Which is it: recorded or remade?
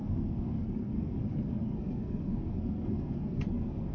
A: remade